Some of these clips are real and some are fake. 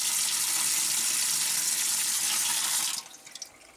real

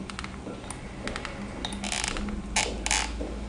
real